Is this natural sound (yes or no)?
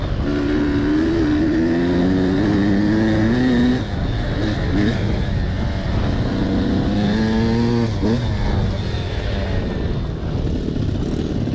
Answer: yes